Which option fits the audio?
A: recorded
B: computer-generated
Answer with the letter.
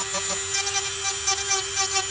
A